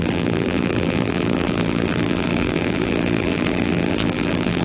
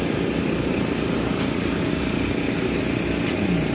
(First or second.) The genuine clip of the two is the second